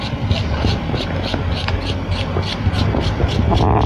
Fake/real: real